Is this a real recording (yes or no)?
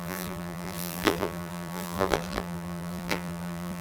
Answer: no